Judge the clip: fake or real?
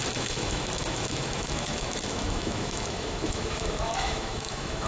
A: fake